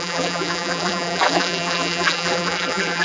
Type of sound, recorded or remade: remade